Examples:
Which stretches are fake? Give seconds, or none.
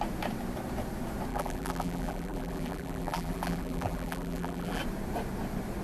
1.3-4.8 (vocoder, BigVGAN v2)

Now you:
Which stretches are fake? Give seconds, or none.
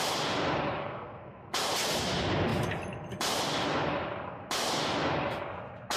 0.8-1.4 (codec, SNAC)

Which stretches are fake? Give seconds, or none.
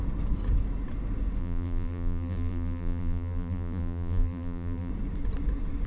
1.4-4.9 (vocoder, BigVGAN v2)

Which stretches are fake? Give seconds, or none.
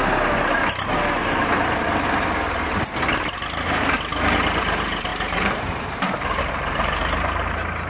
4.6-7.9 (vocoder, BigVGAN v2)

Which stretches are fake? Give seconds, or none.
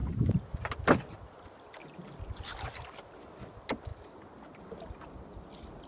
none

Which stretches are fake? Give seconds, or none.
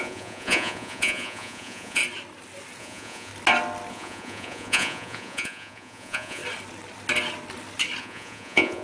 0.0-2.0 (vocoder, Vocos); 2.8-3.3; 3.9-6.4; 8.0-8.8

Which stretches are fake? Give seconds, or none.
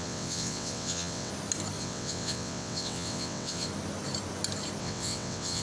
0.0-1.3 (vocoder, WaveNeXt); 1.8-3.7; 4.8-5.6